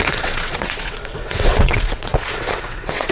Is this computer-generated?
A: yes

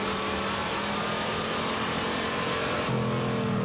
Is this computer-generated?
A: no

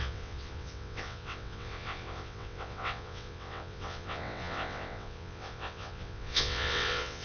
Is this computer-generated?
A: yes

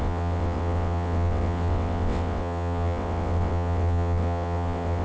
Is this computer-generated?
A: yes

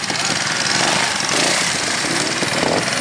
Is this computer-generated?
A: no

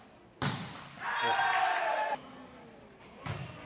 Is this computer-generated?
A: no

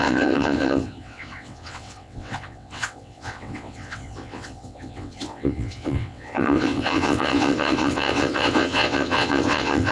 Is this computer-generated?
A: yes